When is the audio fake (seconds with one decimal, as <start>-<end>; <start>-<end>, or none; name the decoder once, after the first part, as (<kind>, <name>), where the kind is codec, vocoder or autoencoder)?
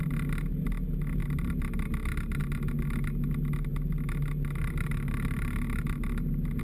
none